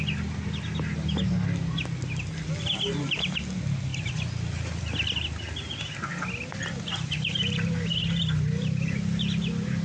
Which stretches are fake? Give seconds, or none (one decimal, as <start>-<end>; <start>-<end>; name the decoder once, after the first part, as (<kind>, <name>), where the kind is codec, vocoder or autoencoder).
none